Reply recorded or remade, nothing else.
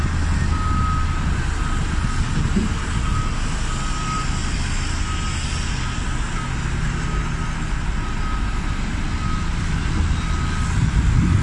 recorded